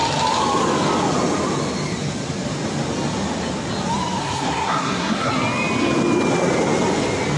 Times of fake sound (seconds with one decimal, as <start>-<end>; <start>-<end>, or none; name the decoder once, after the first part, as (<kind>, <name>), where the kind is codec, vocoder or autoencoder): 4.2-5.3 (codec, SNAC)